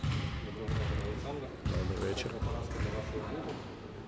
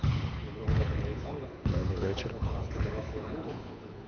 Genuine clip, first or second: first